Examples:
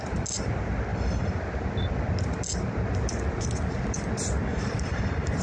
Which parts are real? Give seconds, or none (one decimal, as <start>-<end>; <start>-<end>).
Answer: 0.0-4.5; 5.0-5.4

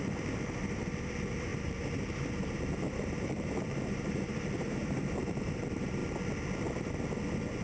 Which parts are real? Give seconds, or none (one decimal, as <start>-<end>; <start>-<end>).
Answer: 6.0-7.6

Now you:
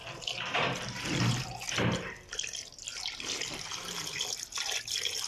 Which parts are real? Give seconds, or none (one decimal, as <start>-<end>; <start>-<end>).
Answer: 2.6-5.3

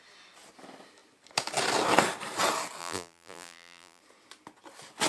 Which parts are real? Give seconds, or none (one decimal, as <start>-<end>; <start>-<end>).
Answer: 0.0-2.8; 4.0-5.1